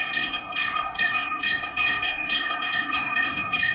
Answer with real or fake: fake